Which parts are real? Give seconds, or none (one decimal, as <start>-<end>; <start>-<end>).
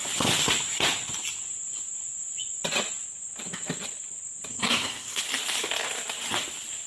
0.0-4.5; 5.2-6.9